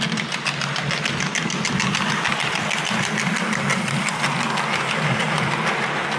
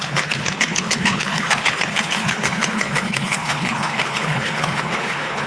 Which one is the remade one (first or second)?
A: second